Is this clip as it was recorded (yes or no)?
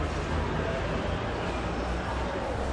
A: yes